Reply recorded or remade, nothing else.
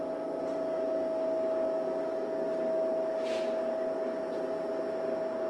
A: recorded